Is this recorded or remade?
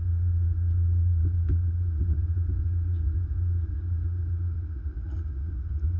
remade